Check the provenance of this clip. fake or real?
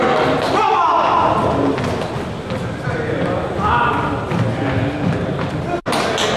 real